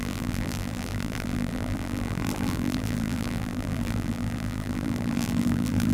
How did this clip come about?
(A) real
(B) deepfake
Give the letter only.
B